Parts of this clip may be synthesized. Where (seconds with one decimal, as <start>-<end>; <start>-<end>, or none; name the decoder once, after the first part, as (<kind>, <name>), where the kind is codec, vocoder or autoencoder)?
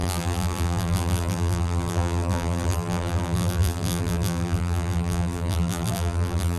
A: 0.0-6.6 (vocoder, BigVGAN v2)